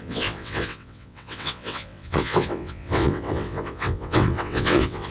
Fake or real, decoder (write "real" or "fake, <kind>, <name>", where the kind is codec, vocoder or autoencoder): fake, vocoder, WaveNeXt